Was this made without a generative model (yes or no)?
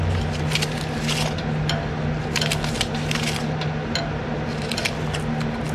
yes